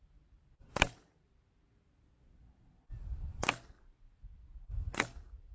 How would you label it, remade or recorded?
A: recorded